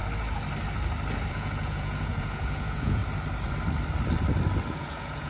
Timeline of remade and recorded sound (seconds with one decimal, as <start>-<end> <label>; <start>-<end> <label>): 0.0-1.3 recorded; 1.3-3.0 remade; 3.0-4.7 recorded; 4.7-5.3 remade